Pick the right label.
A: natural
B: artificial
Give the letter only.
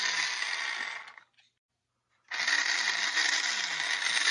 A